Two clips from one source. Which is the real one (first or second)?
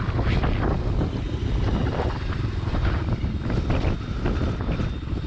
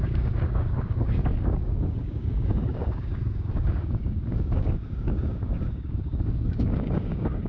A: first